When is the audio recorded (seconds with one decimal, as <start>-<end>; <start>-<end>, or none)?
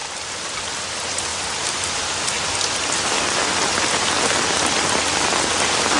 0.0-6.0